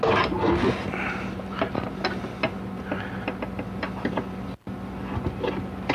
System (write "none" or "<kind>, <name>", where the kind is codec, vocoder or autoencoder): none